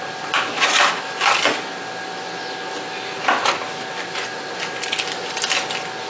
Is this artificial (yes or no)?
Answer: no